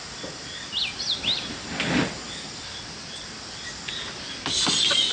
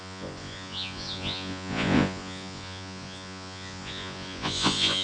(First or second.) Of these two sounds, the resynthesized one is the second